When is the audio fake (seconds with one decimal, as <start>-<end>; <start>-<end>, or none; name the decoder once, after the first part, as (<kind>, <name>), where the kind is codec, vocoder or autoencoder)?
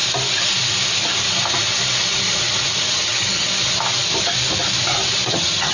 2.9-3.5 (vocoder, HiFi-GAN); 5.3-5.7